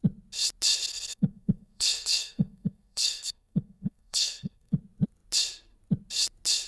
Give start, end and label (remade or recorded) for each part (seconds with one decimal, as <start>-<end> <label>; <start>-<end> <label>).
0.0-0.9 recorded; 0.9-4.8 remade; 4.8-6.7 recorded